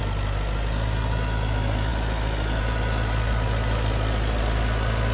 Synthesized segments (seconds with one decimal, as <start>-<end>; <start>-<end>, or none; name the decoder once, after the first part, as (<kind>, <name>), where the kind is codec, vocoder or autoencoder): none